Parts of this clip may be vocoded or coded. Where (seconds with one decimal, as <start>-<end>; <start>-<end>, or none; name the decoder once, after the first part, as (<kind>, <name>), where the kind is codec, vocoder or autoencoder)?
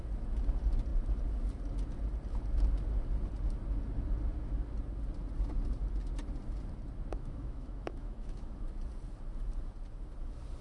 7.1-8.6 (autoencoder, DAC-VAE)